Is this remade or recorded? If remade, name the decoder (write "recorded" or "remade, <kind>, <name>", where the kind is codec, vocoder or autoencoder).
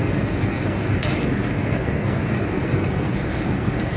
remade, codec, SNAC